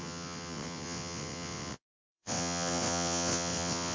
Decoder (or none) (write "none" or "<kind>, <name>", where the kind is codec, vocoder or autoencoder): vocoder, WaveNeXt